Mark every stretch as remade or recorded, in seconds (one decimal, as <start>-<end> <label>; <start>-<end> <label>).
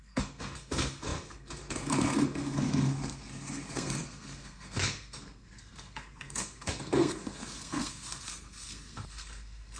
0.0-9.8 remade